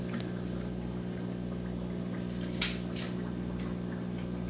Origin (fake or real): real